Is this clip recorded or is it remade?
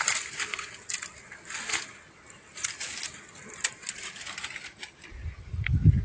recorded